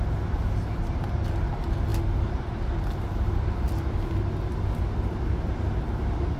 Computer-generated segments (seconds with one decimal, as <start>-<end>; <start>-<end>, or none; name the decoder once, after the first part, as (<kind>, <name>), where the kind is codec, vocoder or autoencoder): none